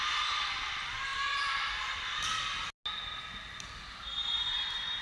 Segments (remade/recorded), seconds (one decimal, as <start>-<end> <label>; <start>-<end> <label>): 0.0-5.0 recorded